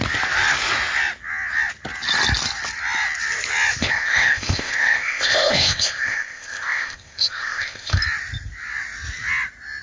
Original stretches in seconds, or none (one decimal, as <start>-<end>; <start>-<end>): 0.0-3.8; 8.0-9.8